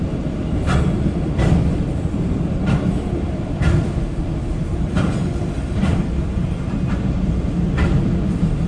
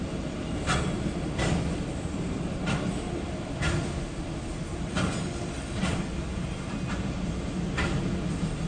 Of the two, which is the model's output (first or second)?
first